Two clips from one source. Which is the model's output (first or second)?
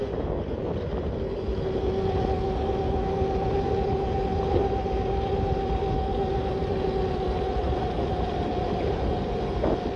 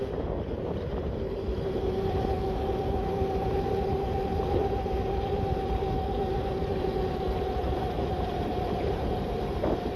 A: second